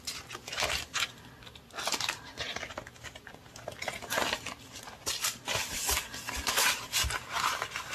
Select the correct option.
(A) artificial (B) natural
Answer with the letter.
B